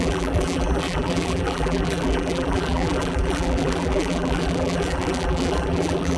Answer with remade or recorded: remade